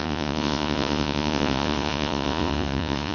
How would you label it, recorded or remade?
remade